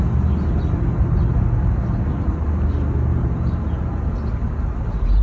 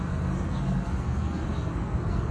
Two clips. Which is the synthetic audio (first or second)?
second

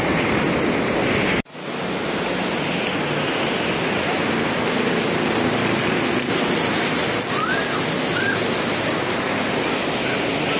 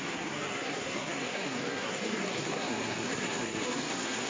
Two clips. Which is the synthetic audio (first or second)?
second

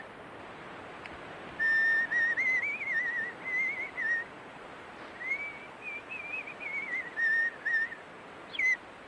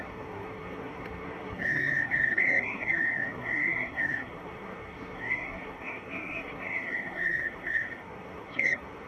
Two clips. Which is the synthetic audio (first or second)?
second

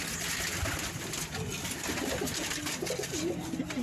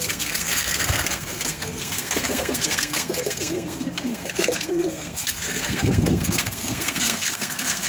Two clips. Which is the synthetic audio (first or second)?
second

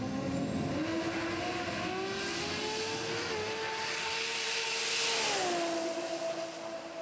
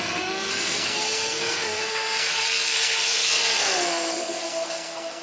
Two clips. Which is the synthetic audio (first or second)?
second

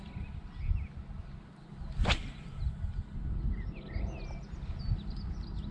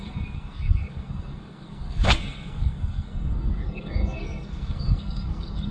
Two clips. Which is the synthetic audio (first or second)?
second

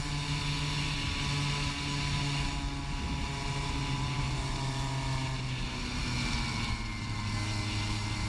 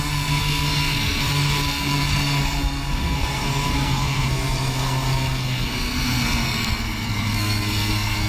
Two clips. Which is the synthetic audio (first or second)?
second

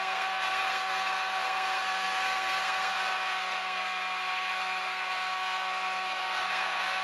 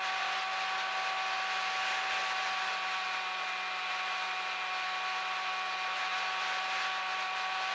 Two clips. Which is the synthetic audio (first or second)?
first